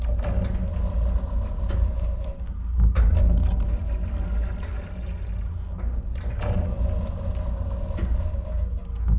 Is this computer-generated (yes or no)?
no